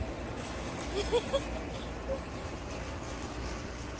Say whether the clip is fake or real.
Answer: real